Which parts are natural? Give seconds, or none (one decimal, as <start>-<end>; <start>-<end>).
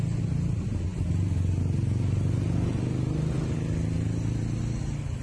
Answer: 0.0-5.2